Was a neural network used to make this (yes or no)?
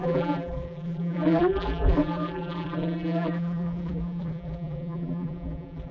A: yes